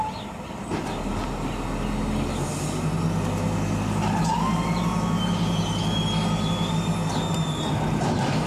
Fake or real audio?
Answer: real